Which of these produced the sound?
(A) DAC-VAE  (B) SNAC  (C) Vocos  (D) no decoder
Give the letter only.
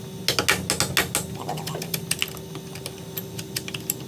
D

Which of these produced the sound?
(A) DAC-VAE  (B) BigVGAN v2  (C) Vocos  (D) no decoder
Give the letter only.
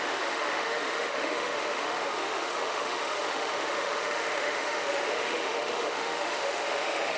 A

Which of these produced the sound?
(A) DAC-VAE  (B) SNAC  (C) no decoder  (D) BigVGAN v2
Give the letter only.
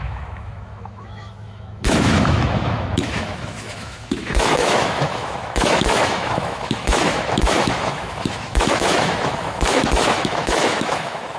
A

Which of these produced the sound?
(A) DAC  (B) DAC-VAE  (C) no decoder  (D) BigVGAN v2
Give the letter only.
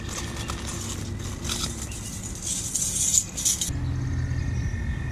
C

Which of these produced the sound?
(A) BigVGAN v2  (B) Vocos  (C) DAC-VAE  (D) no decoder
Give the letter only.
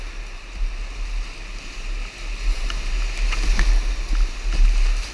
D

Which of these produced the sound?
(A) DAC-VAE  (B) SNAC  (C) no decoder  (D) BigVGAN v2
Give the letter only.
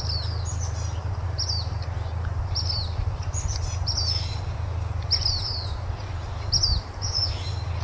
C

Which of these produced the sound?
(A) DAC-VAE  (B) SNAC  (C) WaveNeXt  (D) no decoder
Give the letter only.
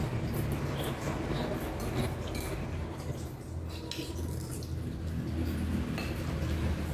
D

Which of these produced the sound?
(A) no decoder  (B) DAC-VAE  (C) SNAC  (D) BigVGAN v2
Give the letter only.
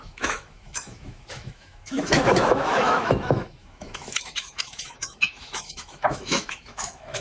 B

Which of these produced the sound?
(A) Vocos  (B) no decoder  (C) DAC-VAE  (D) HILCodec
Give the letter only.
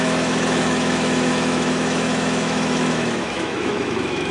C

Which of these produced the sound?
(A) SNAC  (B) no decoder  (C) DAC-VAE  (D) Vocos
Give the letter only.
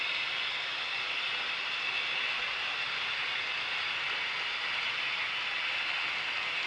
B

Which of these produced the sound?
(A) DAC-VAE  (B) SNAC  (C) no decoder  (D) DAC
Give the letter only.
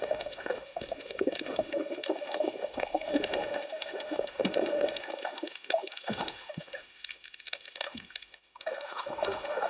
A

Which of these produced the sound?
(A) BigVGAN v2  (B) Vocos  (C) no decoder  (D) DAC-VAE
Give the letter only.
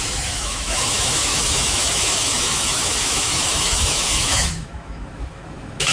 D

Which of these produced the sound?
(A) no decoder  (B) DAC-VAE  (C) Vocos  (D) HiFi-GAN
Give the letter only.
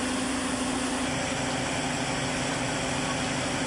A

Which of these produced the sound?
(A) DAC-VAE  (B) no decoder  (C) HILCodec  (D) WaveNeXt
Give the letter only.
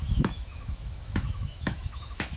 A